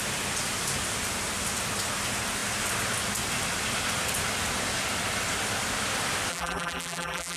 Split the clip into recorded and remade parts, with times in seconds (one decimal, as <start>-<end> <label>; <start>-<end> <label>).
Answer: 0.0-6.3 recorded; 6.3-7.4 remade